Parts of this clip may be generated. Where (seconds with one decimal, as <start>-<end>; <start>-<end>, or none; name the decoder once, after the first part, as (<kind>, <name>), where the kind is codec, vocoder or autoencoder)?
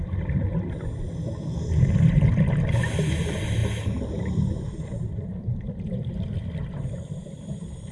0.0-0.5 (vocoder, BigVGAN v2); 3.2-3.6; 4.1-7.9